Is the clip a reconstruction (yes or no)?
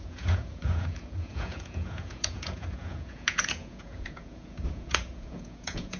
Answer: yes